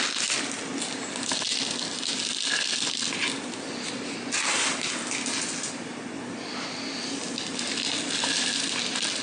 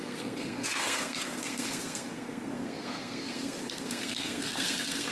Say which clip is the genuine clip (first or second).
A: first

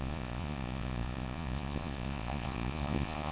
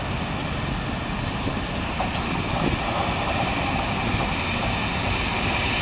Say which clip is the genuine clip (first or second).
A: second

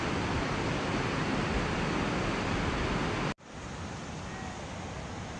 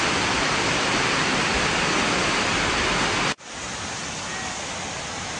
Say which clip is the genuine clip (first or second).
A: first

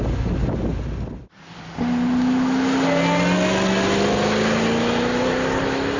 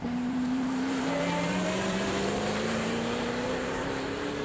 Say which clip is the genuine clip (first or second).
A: first